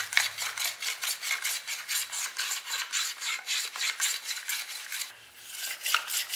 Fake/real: real